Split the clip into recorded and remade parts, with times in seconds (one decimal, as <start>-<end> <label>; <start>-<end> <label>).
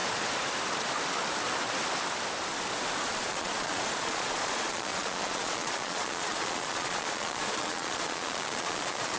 0.0-3.2 recorded; 3.2-9.2 remade